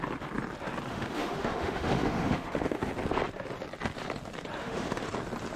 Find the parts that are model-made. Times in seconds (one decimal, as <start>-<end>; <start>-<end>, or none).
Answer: 0.9-2.9; 4.6-5.1